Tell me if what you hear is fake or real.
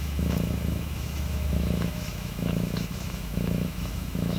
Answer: fake